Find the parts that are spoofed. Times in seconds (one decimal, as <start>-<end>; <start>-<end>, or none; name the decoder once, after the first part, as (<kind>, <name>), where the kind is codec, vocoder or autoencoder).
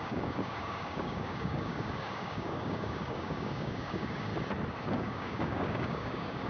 0.0-4.3 (codec, DAC); 4.9-6.5